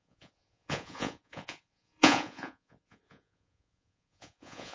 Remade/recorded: remade